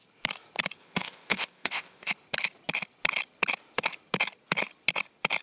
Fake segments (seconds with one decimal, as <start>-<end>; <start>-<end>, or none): 0.8-2.1